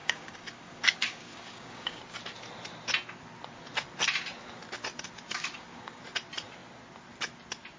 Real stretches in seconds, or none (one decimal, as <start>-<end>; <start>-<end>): 2.0-5.3; 6.0-7.8